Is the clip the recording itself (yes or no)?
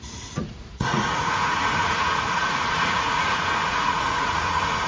no